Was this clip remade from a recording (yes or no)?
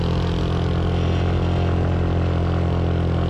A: no